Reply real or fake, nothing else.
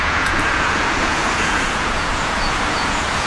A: fake